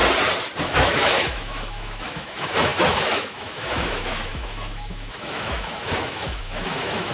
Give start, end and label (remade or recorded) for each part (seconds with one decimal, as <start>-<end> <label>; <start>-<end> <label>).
0.0-0.6 recorded; 0.6-7.1 remade